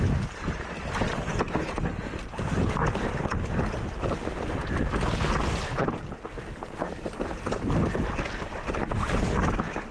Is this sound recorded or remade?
recorded